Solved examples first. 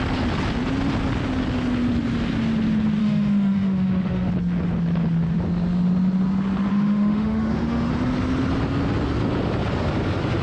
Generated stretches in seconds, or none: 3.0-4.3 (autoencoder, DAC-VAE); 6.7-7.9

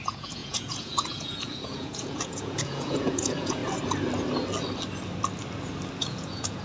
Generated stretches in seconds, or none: 0.0-3.6 (vocoder, Vocos); 6.0-6.6